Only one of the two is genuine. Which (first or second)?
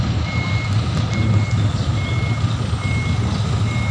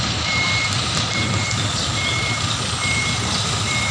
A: first